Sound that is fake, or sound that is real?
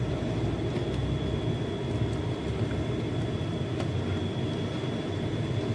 real